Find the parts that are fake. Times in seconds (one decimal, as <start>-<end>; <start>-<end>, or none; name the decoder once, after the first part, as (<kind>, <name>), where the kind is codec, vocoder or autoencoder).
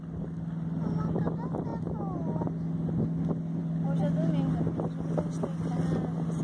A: none